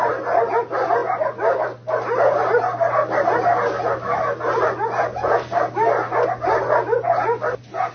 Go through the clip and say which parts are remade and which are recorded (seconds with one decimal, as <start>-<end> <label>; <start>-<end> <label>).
0.0-7.9 recorded